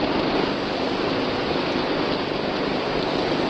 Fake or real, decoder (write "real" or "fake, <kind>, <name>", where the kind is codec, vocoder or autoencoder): real